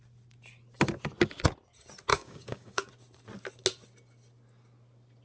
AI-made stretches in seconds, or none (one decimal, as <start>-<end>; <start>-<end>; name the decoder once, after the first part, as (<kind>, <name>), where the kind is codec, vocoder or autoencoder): 2.1-2.9 (codec, DAC)